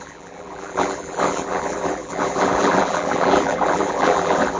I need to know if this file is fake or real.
fake